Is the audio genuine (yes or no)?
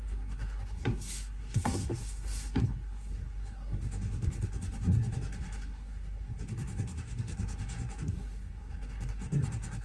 no